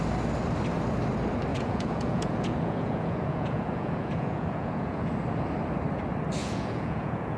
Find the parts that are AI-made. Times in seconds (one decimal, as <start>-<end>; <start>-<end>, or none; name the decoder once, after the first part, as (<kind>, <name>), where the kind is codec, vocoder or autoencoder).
1.5-5.1 (vocoder, Vocos); 6.4-7.4